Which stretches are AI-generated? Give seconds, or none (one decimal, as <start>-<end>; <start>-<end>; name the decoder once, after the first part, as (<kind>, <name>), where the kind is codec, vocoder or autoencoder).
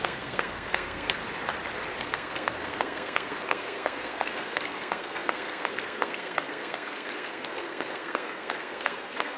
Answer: 0.0-1.2 (codec, SNAC); 2.0-9.4